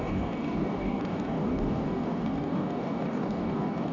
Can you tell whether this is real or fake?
fake